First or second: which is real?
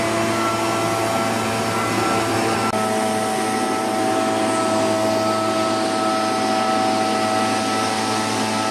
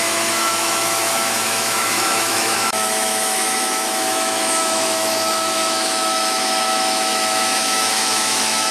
first